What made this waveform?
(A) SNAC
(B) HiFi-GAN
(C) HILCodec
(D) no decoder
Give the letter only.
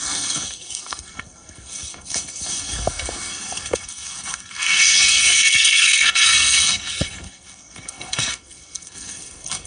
A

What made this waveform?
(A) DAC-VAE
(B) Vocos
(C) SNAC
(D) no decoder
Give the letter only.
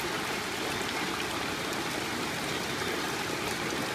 D